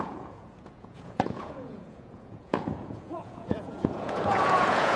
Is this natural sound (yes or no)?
no